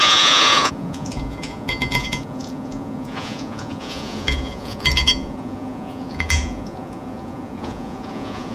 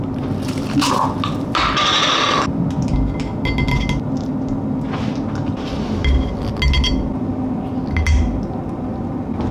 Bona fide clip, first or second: second